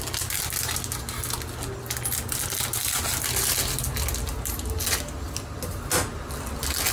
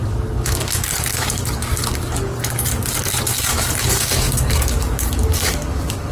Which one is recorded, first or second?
first